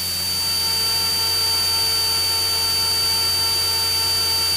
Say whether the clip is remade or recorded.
recorded